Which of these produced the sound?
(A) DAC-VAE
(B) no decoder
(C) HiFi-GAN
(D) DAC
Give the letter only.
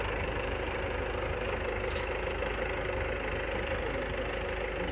B